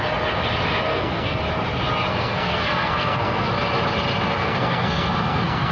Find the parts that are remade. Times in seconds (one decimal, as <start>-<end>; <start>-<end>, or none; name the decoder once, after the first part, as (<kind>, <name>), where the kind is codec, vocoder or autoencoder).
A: 0.9-1.4 (codec, SNAC); 2.1-3.5; 4.4-5.7